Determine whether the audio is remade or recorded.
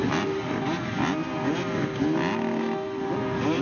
recorded